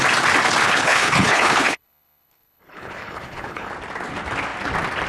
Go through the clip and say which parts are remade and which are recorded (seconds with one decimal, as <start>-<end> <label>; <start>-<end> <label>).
0.0-0.6 recorded; 0.6-3.7 remade; 3.7-5.1 recorded